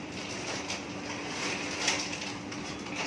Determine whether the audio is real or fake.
real